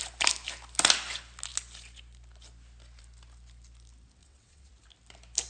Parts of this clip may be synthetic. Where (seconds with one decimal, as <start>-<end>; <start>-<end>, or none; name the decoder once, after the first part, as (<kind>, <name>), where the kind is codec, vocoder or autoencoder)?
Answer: 4.2-4.7 (vocoder, WaveNeXt)